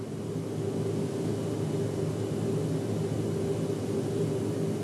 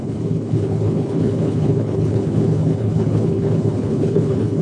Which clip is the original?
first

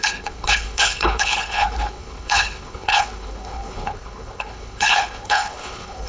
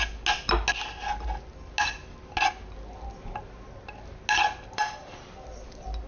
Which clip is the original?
second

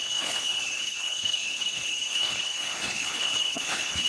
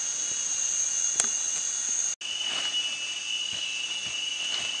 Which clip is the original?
second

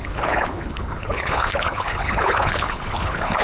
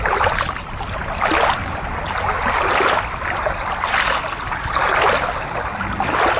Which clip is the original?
second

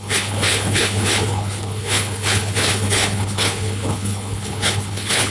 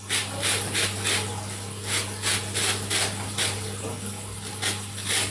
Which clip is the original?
second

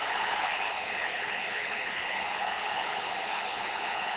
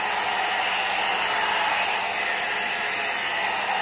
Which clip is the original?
second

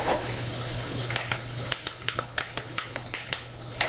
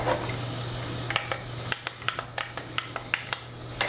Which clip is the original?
second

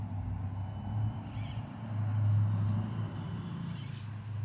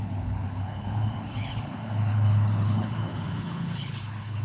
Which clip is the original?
first